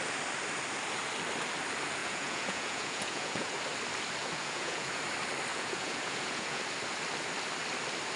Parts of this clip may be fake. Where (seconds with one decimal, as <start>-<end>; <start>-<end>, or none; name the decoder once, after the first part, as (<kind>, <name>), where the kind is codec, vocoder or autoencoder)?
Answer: 2.0-3.5 (vocoder, Vocos); 4.2-5.0; 5.5-6.6